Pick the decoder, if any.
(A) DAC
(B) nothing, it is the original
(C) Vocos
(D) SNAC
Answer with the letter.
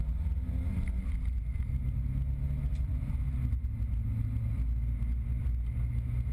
B